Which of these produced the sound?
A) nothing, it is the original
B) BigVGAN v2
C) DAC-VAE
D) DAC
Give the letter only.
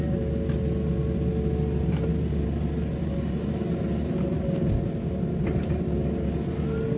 A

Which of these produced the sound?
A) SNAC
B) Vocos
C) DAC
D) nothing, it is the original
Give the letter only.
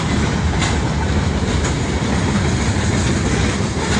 D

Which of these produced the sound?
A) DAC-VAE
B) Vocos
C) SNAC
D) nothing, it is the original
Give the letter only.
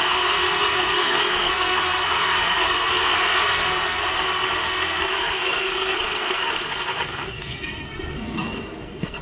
C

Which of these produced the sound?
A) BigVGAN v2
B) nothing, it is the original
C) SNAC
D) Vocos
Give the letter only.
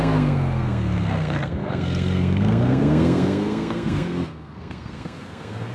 C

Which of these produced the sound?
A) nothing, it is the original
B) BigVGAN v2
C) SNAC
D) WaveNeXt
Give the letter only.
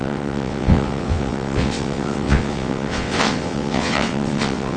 D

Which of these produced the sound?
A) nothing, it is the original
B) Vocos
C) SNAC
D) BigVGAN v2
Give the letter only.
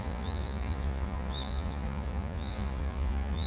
B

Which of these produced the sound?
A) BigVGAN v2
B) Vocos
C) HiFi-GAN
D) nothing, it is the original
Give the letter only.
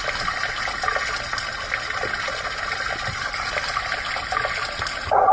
D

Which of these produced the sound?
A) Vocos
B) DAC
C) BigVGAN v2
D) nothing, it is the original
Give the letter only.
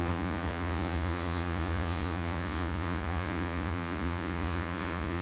A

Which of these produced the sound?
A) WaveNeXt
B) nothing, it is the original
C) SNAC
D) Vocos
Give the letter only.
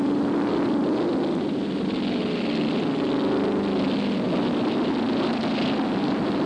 B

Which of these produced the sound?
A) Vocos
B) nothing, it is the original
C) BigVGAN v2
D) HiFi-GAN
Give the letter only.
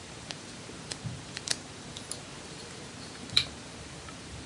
C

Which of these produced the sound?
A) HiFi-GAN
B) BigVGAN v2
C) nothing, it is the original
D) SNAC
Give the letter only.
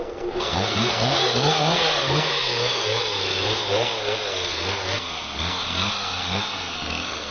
D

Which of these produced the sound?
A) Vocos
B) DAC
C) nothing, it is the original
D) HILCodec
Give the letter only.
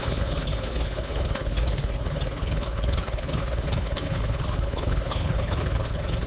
D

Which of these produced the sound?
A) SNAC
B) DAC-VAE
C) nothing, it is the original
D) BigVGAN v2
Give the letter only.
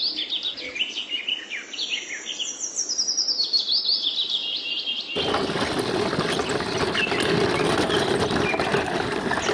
C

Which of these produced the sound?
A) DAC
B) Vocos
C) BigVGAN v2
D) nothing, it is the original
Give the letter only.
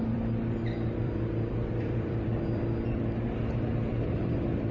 C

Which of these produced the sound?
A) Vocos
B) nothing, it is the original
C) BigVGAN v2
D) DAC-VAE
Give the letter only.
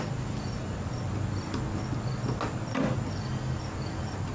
B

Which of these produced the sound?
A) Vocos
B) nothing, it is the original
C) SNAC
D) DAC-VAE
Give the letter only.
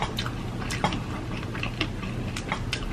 B